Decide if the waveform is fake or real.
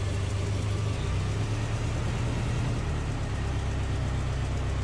real